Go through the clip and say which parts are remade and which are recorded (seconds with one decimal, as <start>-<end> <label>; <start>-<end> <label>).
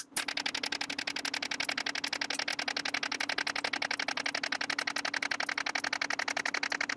0.0-7.0 recorded